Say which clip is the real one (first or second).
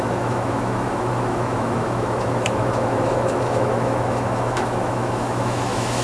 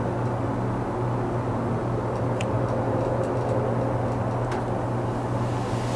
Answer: second